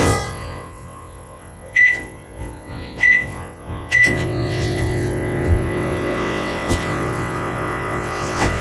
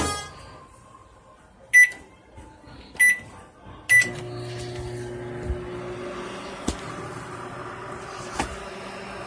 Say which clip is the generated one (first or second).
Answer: first